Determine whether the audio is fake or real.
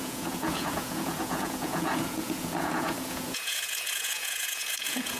fake